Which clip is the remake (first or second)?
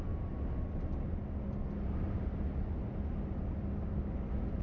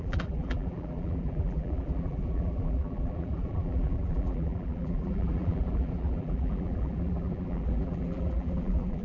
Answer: second